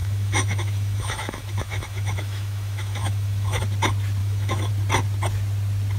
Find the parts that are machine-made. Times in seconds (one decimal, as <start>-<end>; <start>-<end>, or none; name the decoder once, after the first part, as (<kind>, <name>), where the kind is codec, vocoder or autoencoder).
0.0-3.6 (autoencoder, DAC-VAE); 4.2-4.7